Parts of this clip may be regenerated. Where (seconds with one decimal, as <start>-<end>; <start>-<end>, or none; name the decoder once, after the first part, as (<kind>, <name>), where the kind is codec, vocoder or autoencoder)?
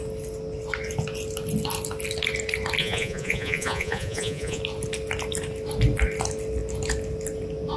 2.8-4.6 (vocoder, Vocos)